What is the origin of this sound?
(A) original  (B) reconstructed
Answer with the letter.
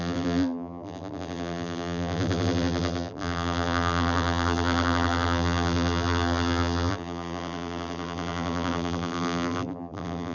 B